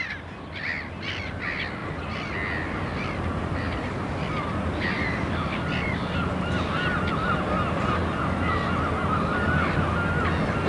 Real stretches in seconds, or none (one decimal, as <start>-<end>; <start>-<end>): 0.0-10.7